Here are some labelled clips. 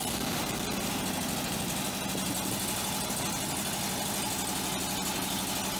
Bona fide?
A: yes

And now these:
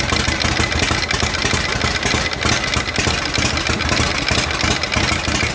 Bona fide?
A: yes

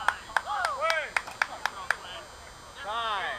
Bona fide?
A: yes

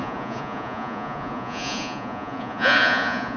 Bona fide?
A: no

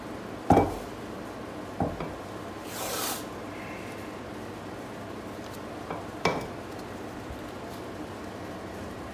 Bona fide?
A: yes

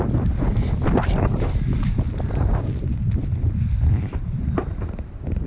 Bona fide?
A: yes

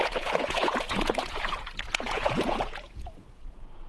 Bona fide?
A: no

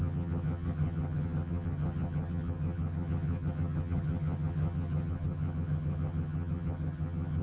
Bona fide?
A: no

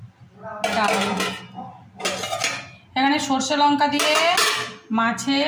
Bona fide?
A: yes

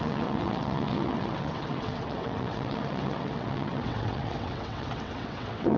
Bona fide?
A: no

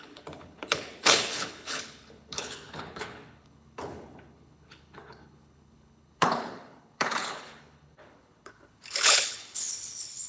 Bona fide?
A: no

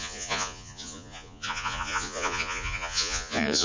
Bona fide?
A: no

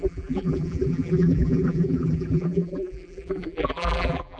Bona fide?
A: no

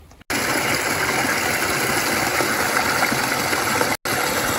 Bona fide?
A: yes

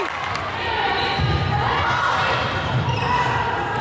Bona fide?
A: yes